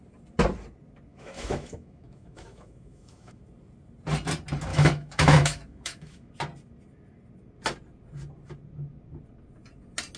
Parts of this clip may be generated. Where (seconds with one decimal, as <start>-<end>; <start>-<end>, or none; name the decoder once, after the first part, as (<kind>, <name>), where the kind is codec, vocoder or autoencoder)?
1.1-3.4 (autoencoder, DAC-VAE); 4.7-6.3